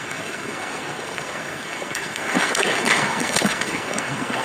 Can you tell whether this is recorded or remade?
remade